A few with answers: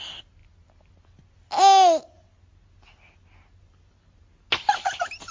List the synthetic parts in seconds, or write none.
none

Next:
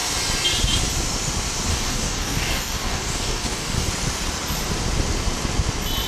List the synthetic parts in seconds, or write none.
1.7-3.9 (codec, DAC)

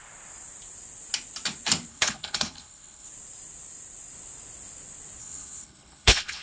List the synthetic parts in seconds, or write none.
1.9-3.1 (codec, HILCodec); 5.2-6.4

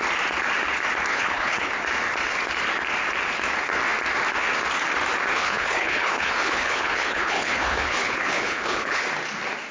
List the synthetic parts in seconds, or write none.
1.1-1.7 (codec, HILCodec); 5.3-9.0